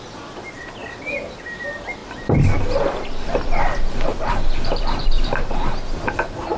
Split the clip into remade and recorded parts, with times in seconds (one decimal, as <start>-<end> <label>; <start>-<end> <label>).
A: 0.0-6.6 recorded